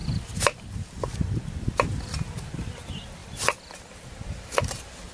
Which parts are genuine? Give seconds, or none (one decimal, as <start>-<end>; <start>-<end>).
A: 0.0-5.1